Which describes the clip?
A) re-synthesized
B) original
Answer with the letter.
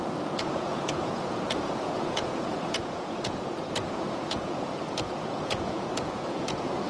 A